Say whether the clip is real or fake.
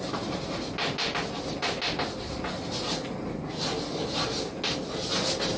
real